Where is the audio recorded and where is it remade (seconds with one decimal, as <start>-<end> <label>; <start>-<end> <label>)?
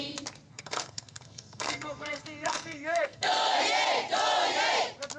0.0-0.5 recorded; 0.5-3.6 remade; 3.6-5.2 recorded